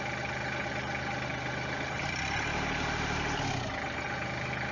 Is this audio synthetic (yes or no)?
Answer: no